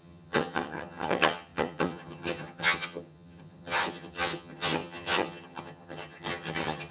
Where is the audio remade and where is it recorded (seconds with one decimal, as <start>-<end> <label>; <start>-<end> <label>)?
0.0-6.9 remade